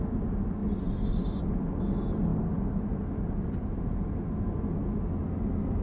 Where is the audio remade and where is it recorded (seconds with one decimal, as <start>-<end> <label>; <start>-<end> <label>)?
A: 0.0-5.8 recorded